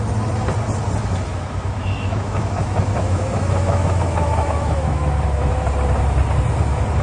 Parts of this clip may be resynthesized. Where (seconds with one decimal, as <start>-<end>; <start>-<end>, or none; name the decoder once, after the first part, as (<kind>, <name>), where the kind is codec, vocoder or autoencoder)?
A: 1.3-5.5 (autoencoder, DAC-VAE)